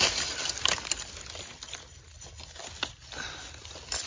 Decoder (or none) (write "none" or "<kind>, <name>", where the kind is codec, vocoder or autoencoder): none